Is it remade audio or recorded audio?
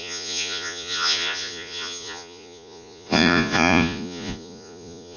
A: remade